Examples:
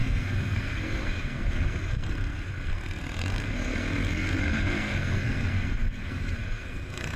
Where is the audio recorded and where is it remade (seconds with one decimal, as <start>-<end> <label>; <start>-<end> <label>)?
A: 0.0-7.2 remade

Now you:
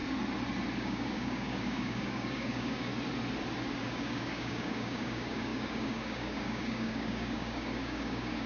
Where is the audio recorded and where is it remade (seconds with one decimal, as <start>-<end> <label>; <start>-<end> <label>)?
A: 0.0-0.8 recorded; 0.8-2.9 remade; 2.9-3.8 recorded; 3.8-8.5 remade

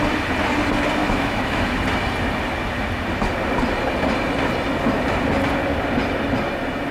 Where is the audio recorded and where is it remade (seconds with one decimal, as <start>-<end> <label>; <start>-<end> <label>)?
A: 0.0-1.0 recorded; 1.0-1.8 remade; 1.8-6.9 recorded

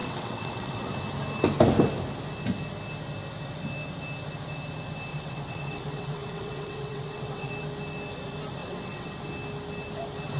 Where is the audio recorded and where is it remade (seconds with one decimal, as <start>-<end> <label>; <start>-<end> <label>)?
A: 0.0-0.9 remade; 0.9-5.1 recorded; 5.1-7.5 remade; 7.5-8.6 recorded; 8.6-9.1 remade; 9.1-10.4 recorded

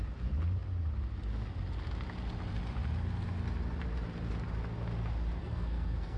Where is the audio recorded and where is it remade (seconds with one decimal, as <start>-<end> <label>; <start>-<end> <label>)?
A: 0.0-5.4 recorded; 5.4-6.2 remade

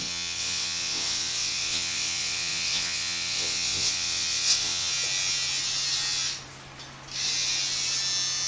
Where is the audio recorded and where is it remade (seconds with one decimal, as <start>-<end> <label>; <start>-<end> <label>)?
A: 0.0-4.9 remade; 4.9-8.5 recorded

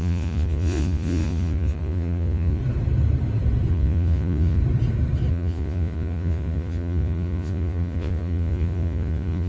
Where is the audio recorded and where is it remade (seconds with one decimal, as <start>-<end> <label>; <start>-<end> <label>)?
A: 0.0-2.6 remade; 2.6-3.7 recorded; 3.7-4.6 remade; 4.6-5.3 recorded; 5.3-9.5 remade

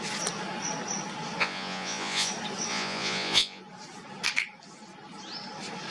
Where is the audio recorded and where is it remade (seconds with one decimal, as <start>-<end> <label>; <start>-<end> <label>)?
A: 0.0-1.4 recorded; 1.4-2.3 remade; 2.3-2.7 recorded; 2.7-3.6 remade; 3.6-5.9 recorded